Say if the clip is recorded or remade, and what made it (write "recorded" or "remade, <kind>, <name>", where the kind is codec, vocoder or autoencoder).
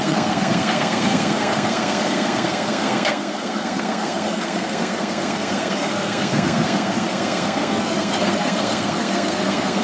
remade, codec, SNAC